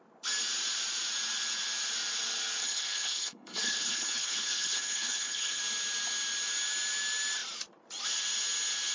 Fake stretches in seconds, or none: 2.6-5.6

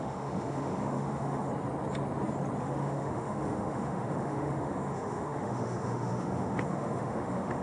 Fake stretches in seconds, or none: 0.0-1.5; 2.6-7.6